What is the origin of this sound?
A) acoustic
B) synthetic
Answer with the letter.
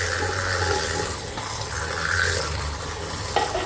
A